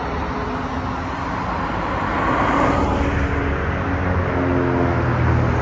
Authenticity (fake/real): real